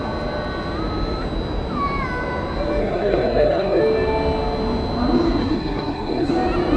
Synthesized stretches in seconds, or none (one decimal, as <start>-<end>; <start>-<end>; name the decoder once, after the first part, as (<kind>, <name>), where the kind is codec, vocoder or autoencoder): 2.8-3.8 (codec, SNAC); 5.4-6.3